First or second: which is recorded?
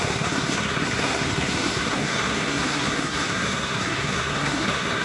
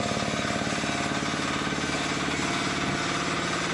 second